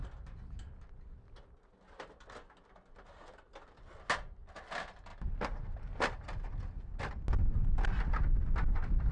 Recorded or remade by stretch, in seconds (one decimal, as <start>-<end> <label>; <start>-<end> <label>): 0.0-9.1 recorded